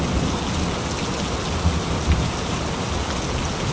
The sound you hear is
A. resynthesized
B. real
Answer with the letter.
B